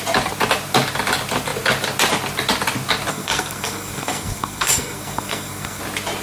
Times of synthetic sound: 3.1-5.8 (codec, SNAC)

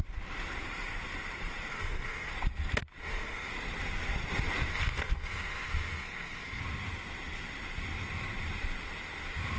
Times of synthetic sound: 1.7-2.3 (codec, SNAC); 3.0-3.5; 4.7-6.6

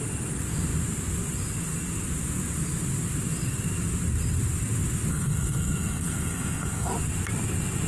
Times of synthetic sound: 5.1-6.9 (codec, SNAC)

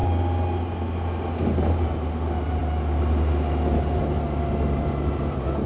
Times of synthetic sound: none

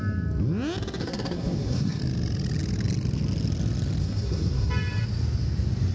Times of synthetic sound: 1.0-2.0 (codec, SNAC); 4.0-4.7

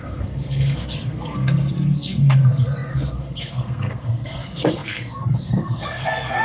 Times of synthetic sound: 0.0-6.4 (codec, SNAC)

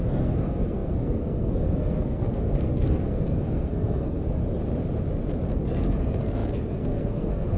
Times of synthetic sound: 0.0-4.4 (codec, SNAC); 5.5-7.6

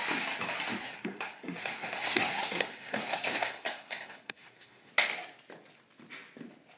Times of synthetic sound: 0.8-4.9 (codec, SNAC)